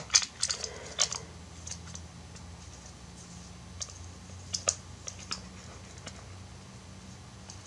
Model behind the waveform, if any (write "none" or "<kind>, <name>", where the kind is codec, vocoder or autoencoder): none